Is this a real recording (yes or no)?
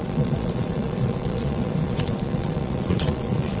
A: no